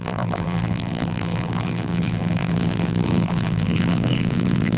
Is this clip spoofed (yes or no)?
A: yes